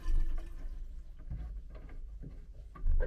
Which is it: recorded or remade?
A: recorded